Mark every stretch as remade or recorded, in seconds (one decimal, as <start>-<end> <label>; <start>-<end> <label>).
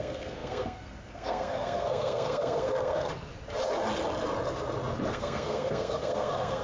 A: 0.0-3.1 remade; 3.1-5.1 recorded; 5.1-6.6 remade